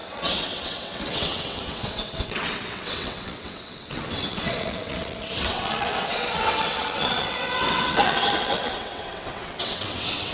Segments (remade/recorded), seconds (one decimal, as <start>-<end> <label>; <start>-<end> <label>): 0.0-10.3 remade